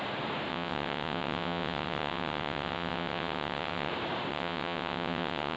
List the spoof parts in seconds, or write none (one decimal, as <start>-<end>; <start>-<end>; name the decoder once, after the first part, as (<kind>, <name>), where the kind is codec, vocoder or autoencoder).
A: 0.5-3.9 (vocoder, WaveNeXt); 4.3-5.6